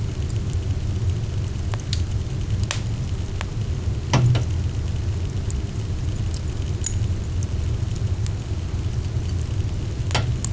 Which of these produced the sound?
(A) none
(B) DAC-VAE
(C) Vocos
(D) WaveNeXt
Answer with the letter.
A